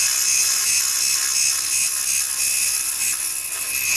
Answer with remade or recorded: recorded